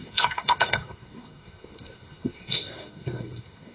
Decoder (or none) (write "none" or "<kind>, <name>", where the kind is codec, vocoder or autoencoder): codec, SNAC